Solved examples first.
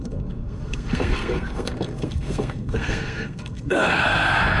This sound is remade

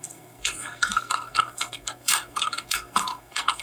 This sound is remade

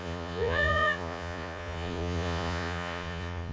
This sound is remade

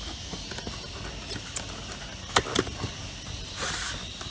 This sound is recorded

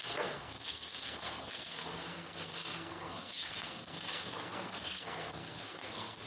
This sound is remade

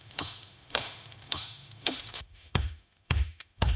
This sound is remade